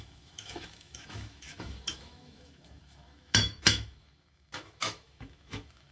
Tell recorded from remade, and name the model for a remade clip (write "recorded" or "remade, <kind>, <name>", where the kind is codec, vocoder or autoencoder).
remade, autoencoder, DAC-VAE